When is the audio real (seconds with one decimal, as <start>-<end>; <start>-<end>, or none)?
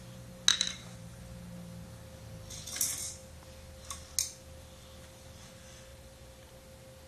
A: 0.0-0.5; 1.2-5.9; 6.5-7.1